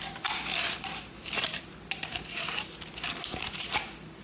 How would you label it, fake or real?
real